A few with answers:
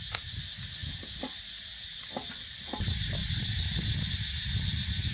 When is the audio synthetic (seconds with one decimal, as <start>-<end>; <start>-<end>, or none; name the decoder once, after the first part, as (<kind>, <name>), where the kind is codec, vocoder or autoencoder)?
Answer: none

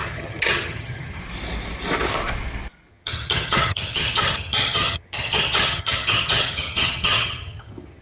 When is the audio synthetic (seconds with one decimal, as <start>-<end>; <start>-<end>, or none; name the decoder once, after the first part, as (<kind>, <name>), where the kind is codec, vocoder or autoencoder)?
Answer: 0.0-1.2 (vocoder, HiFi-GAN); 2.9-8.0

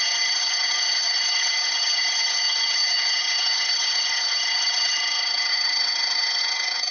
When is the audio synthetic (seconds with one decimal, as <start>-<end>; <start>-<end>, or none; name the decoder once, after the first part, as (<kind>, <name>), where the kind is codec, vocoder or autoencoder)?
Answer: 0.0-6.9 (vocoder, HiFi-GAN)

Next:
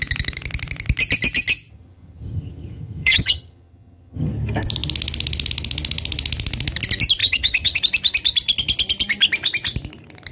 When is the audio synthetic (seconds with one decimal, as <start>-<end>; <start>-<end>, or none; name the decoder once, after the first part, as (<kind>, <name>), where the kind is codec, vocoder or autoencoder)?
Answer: 1.7-4.3 (vocoder, HiFi-GAN); 7.2-7.8